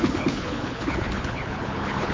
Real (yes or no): no